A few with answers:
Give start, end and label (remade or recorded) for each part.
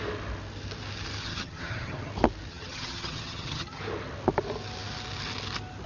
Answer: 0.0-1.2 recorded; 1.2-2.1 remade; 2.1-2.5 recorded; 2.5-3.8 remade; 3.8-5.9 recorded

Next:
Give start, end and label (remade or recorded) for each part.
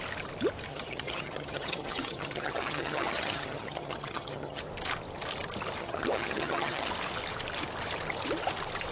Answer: 0.0-0.7 recorded; 0.7-4.6 remade; 4.6-5.8 recorded; 5.8-6.9 remade; 6.9-8.9 recorded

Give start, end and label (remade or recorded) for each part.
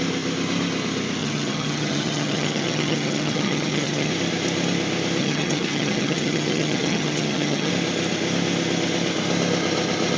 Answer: 0.0-1.2 recorded; 1.2-4.1 remade; 4.1-5.2 recorded; 5.2-7.7 remade; 7.7-10.2 recorded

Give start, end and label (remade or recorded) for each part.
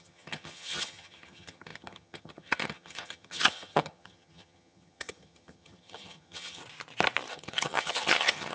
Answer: 0.0-6.6 remade; 6.6-7.3 recorded; 7.3-8.5 remade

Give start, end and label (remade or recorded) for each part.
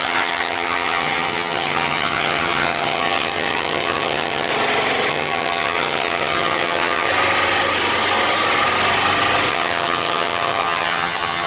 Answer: 0.0-4.5 remade; 4.5-5.1 recorded; 5.1-7.1 remade; 7.1-9.5 recorded; 9.5-11.5 remade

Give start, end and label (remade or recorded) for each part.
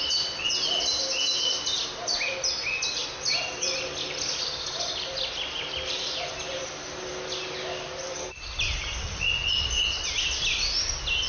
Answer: 0.0-11.3 recorded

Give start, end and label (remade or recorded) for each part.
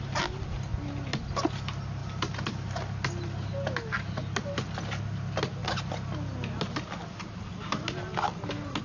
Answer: 0.0-8.8 recorded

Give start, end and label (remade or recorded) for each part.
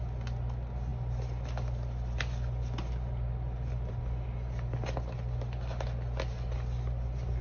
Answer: 0.0-7.4 recorded